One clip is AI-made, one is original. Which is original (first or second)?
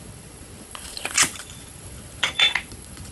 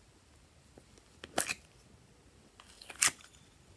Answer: second